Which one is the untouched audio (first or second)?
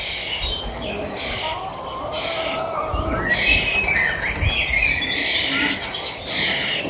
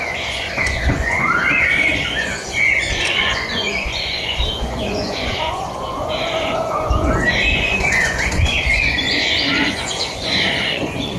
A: first